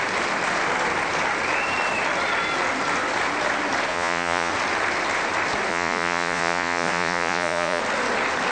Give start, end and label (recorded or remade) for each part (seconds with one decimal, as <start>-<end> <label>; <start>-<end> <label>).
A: 0.0-3.9 recorded; 3.9-4.5 remade; 4.5-5.7 recorded; 5.7-7.8 remade; 7.8-8.5 recorded